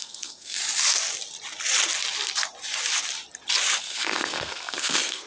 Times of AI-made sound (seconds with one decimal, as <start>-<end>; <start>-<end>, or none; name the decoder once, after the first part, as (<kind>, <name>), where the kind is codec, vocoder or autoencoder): 0.0-0.6 (codec, SNAC); 3.8-5.3

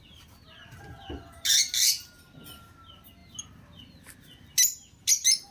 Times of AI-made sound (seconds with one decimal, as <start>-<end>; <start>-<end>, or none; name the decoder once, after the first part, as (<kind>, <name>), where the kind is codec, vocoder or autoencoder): none